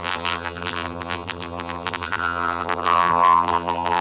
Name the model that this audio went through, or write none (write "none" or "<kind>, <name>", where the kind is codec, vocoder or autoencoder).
vocoder, BigVGAN v2